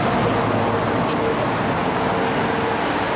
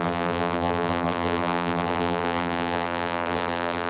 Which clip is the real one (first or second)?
first